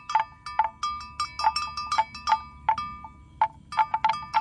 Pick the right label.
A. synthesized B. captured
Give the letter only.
B